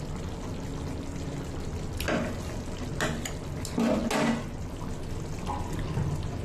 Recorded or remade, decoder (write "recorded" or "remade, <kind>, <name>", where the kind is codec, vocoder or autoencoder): recorded